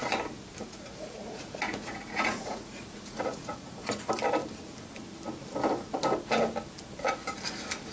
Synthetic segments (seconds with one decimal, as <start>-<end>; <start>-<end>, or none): 0.6-4.0